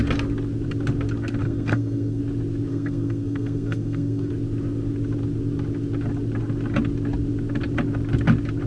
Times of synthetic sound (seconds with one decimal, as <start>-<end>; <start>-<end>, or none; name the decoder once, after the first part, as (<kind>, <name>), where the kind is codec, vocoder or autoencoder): 1.4-2.2 (codec, SNAC); 2.7-4.3